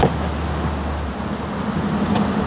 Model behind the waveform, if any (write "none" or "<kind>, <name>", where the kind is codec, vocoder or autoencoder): none